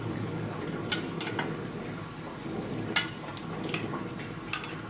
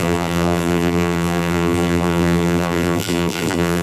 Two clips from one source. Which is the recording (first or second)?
first